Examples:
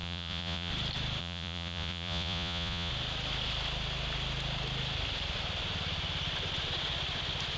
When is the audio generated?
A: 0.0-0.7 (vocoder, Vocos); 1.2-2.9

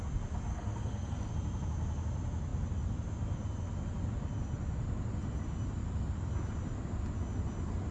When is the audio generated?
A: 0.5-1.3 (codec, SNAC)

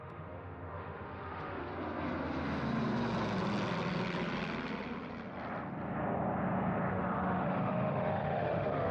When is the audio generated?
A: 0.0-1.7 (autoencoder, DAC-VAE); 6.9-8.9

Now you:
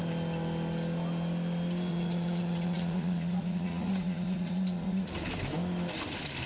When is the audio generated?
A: 1.9-5.1 (vocoder, Vocos)

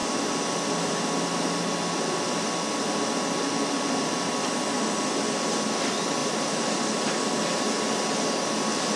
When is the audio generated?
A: 6.2-6.9 (vocoder, BigVGAN v2)

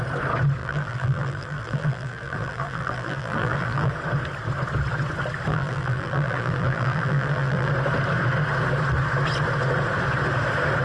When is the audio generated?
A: 0.6-3.9 (vocoder, BigVGAN v2); 5.5-7.7

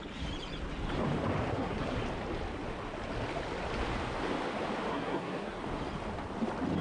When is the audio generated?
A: 1.5-2.0 (codec, SNAC); 4.9-5.6

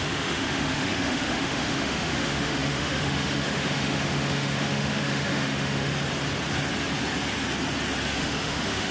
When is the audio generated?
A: 0.0-5.9 (autoencoder, DAC-VAE); 8.1-8.9